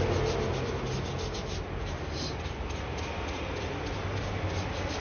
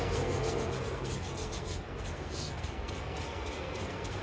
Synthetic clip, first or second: second